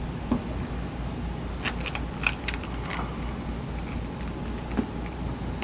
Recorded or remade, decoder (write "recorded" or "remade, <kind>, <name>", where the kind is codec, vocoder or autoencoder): recorded